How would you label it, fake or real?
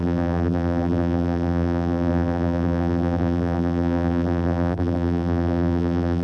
fake